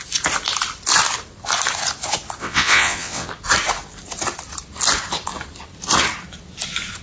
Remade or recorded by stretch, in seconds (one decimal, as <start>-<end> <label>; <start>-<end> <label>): 0.0-2.4 recorded; 2.4-3.3 remade; 3.3-7.0 recorded